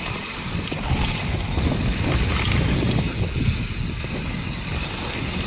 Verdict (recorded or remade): recorded